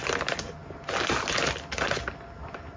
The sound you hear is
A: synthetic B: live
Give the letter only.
B